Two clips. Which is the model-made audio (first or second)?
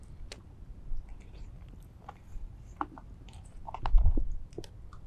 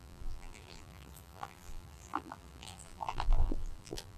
second